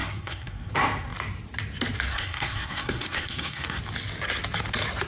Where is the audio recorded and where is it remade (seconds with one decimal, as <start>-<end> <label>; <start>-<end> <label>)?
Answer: 0.0-0.7 remade; 0.7-2.1 recorded; 2.1-3.8 remade; 3.8-5.1 recorded